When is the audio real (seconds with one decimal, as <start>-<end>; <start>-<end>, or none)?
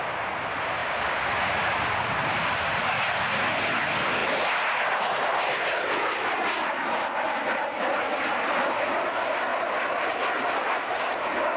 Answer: 0.0-11.6